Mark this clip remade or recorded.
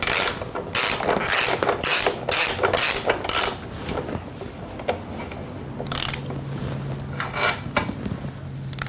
recorded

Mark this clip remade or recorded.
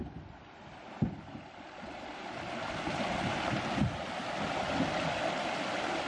recorded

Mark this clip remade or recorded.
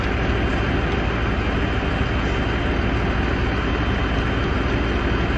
recorded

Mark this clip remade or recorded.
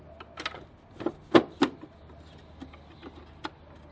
recorded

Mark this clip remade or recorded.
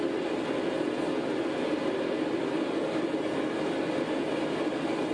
recorded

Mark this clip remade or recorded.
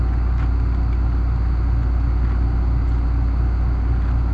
recorded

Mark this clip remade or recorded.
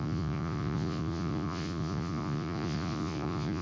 remade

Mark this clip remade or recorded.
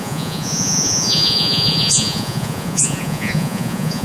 remade